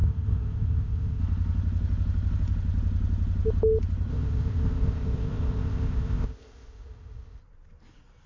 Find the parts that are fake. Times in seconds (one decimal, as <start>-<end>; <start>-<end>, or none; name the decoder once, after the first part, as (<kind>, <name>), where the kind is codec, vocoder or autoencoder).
0.0-1.2 (codec, ZipCodec); 4.1-7.4